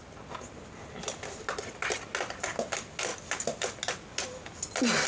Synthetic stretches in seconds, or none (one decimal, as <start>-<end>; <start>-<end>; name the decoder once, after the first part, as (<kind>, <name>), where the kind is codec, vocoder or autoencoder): none